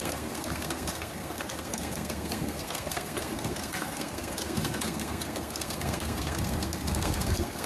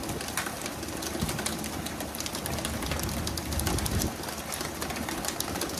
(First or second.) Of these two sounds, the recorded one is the second